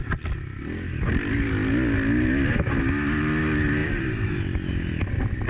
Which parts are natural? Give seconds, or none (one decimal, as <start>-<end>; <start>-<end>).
0.0-3.8